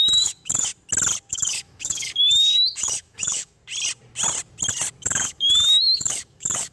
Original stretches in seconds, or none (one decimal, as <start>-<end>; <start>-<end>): 0.7-1.3; 3.6-5.0

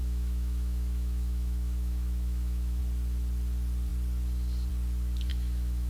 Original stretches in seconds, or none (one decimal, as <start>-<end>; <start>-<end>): 2.8-5.3

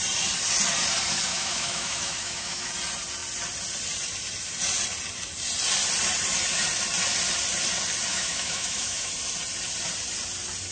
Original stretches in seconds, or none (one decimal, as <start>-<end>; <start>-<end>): 0.0-1.3; 2.7-8.1; 9.1-10.7

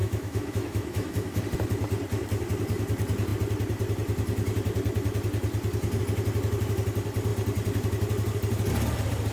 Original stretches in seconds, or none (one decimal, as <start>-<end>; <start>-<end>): 1.4-9.3

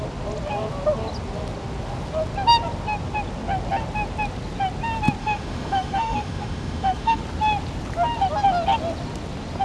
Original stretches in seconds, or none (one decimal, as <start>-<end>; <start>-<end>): 0.0-5.2; 7.2-9.6

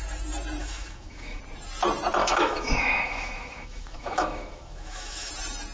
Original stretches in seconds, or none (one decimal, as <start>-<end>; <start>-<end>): 0.0-0.6; 1.4-2.2; 5.3-5.7

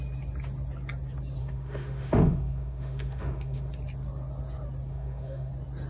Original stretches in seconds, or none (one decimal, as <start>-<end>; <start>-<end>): 0.0-1.4; 3.7-4.9; 5.5-5.9

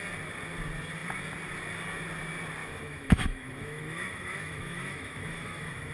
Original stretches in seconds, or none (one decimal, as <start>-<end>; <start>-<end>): 0.0-2.6